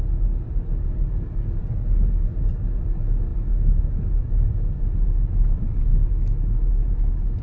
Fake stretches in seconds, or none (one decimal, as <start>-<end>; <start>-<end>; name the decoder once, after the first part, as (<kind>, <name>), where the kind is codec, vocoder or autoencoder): 5.9-6.7 (autoencoder, DAC-VAE)